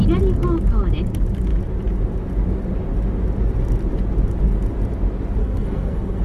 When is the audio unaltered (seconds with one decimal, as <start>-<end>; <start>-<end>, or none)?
0.0-5.4